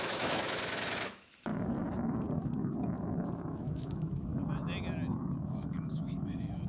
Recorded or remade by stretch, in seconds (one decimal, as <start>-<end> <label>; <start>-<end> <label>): 0.0-1.5 remade; 1.5-3.5 recorded; 3.5-4.3 remade; 4.3-5.5 recorded; 5.5-6.7 remade